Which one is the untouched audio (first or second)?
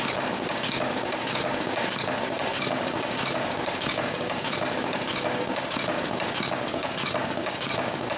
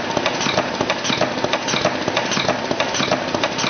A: second